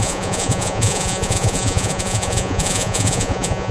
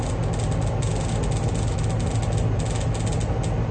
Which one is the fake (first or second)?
first